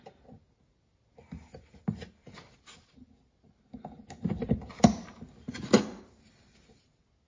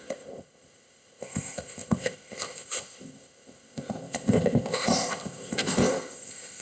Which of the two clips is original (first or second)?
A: first